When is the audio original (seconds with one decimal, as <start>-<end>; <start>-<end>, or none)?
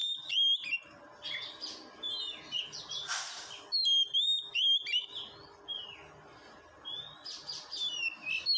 0.0-8.6